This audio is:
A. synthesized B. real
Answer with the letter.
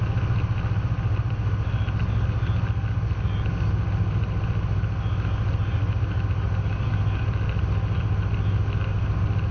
B